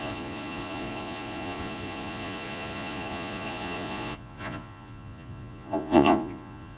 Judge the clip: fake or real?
fake